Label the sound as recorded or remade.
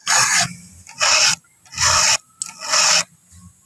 recorded